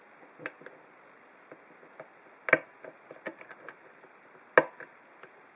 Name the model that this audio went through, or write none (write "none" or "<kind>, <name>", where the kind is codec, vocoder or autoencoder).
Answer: none